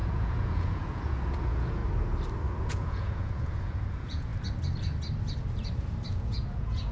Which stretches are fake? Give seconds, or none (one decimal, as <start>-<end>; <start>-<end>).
0.0-1.8; 2.6-4.3; 6.1-6.9